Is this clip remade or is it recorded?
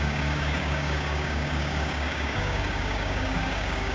remade